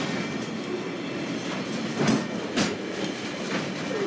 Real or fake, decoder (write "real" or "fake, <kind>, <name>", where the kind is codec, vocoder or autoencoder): real